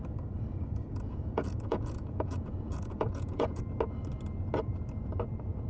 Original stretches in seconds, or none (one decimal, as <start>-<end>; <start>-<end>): 0.0-0.9; 3.6-5.7